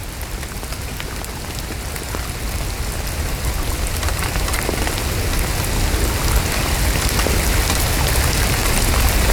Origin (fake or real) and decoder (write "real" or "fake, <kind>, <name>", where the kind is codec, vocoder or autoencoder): real